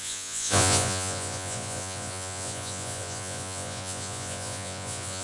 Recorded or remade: remade